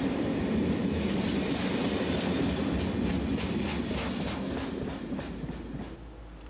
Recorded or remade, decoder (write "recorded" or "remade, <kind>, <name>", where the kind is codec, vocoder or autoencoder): recorded